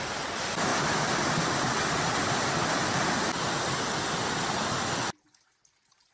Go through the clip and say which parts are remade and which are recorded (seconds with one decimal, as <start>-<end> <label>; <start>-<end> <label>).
0.0-6.1 recorded